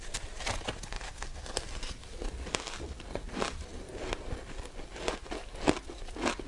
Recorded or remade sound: recorded